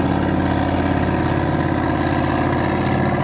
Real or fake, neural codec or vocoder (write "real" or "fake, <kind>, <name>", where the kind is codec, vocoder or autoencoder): real